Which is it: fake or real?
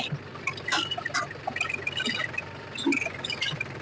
real